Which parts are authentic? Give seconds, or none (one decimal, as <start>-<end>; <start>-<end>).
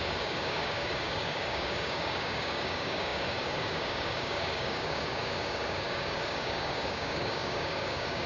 none